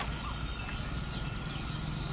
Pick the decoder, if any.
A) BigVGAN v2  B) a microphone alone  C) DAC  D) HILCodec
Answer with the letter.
B